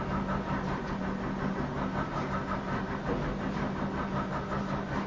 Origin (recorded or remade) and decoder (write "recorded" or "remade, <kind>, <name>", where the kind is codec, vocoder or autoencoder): recorded